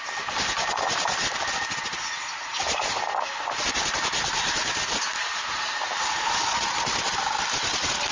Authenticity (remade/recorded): recorded